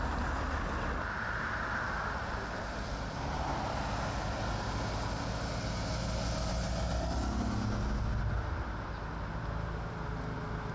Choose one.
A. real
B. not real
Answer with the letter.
A